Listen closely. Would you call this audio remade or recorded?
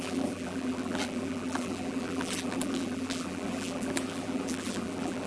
remade